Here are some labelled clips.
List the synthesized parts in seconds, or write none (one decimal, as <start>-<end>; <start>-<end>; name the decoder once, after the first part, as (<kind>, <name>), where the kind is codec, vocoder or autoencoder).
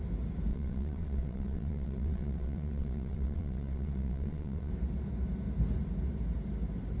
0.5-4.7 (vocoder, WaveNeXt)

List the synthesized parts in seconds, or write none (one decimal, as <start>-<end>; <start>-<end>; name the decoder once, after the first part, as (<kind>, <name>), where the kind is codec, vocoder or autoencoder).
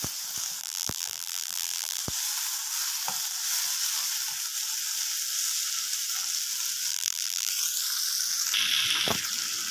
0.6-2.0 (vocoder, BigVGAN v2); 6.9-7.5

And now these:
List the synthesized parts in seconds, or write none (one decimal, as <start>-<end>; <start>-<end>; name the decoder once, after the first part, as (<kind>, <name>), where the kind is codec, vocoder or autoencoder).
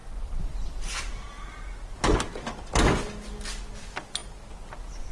none